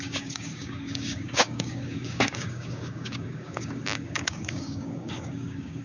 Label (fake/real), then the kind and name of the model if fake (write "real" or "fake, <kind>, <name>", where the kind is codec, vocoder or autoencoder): fake, codec, DAC